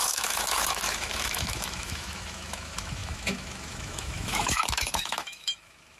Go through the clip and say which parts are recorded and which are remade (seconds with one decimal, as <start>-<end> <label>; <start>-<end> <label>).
0.0-6.0 remade